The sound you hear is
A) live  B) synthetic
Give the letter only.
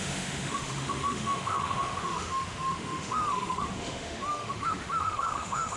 B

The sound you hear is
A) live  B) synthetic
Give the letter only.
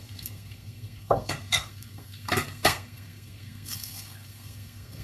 B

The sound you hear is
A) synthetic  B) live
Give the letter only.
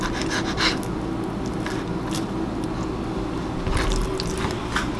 B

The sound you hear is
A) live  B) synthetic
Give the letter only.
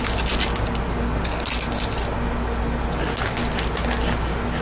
A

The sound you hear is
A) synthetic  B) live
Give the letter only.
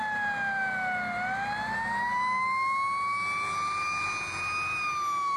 B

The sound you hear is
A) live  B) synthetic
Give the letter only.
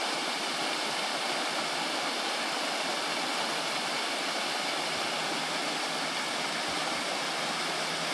A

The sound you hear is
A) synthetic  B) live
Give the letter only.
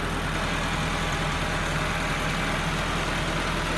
B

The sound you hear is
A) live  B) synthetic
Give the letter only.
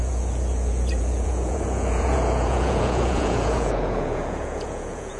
B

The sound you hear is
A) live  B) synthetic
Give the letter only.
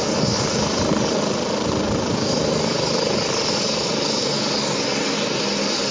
A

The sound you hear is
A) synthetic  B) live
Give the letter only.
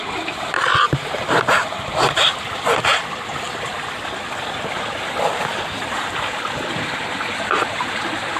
B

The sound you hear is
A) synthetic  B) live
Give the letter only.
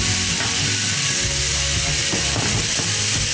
B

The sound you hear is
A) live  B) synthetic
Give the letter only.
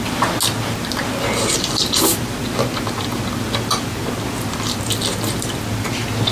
A